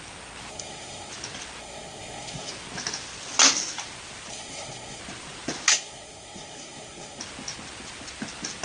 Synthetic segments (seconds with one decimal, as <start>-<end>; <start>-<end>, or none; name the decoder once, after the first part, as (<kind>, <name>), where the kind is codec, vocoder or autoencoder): 0.5-1.1 (codec, SNAC); 1.6-2.5; 4.3-5.0; 5.7-7.2